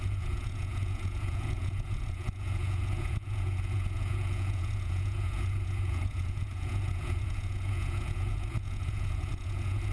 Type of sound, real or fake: fake